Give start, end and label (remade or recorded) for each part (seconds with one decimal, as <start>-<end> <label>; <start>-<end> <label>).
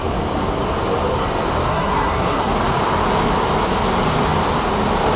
0.0-1.7 recorded; 1.7-2.5 remade; 2.5-5.2 recorded